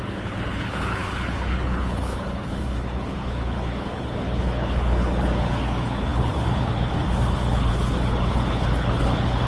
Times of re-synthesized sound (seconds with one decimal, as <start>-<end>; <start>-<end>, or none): 0.0-9.5